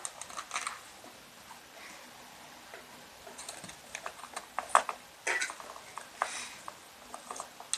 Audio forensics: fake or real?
real